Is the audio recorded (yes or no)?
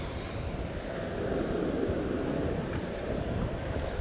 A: no